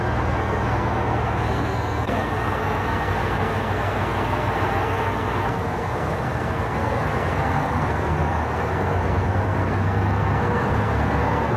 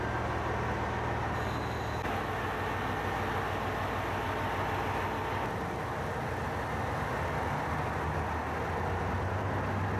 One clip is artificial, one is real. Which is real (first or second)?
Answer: second